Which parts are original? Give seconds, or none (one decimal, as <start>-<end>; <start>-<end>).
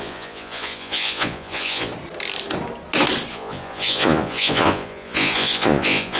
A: 1.9-3.3